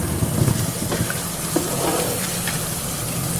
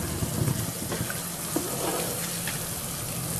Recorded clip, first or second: second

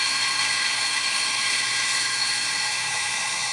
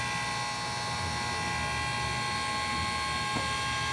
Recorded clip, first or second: second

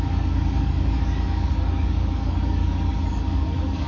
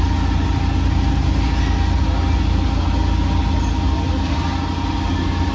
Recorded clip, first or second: second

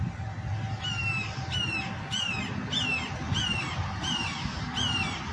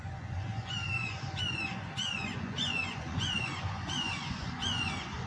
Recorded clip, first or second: first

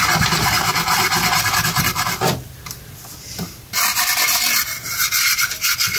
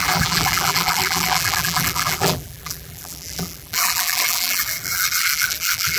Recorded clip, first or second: first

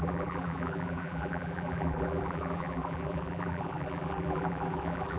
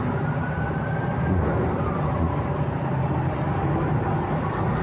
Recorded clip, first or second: second